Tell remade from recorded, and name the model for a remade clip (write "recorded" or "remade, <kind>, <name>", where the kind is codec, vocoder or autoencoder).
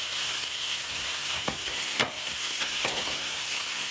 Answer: remade, codec, SNAC